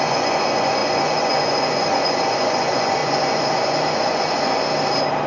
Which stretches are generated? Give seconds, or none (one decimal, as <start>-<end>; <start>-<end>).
0.0-4.6